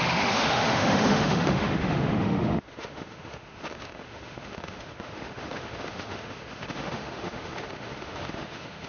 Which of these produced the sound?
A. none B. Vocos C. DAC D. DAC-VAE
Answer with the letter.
D